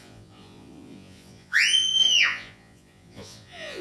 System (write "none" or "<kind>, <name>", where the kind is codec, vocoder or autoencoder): vocoder, Vocos